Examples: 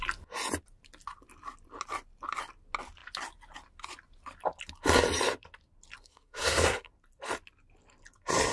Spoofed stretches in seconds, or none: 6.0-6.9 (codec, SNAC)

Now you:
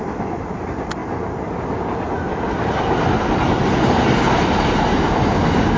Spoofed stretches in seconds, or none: none

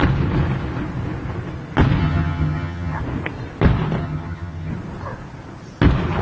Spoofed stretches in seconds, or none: 2.0-3.0 (vocoder, HiFi-GAN); 4.0-4.7

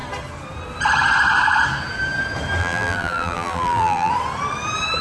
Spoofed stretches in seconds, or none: 2.6-4.1 (vocoder, BigVGAN v2)

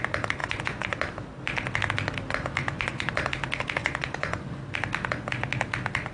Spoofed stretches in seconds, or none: 0.4-1.0 (vocoder, Vocos); 2.6-3.1; 3.8-4.6

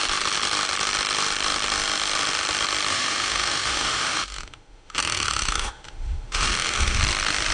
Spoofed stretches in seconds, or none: 2.9-7.0 (autoencoder, DAC-VAE)